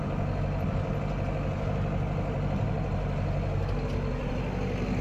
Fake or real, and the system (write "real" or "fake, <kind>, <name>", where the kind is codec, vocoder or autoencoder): real